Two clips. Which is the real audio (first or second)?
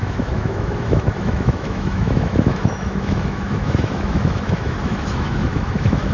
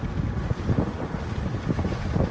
second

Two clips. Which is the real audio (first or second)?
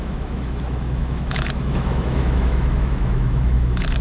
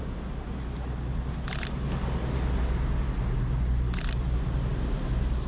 second